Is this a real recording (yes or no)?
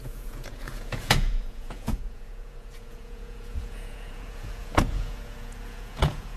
no